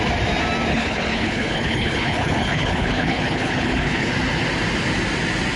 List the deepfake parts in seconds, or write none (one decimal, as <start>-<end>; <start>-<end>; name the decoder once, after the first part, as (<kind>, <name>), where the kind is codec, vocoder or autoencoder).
0.7-4.1 (codec, HILCodec)